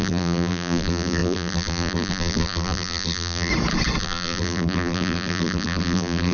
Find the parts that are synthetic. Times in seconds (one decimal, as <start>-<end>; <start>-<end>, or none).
0.0-3.5; 4.0-6.3